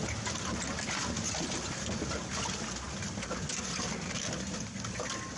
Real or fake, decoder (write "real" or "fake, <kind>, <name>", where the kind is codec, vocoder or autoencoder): real